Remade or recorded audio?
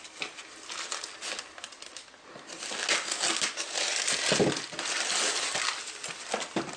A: recorded